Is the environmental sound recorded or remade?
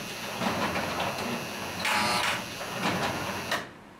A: recorded